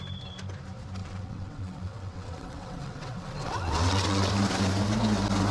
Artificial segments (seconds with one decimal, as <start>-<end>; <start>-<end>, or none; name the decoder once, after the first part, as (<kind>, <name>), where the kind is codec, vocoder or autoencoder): 1.0-4.3 (vocoder, WaveNeXt)